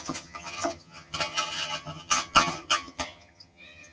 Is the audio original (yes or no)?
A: no